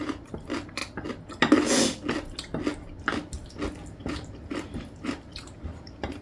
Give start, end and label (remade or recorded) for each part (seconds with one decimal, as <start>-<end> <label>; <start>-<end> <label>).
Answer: 0.0-0.8 remade; 0.8-4.5 recorded; 4.5-6.2 remade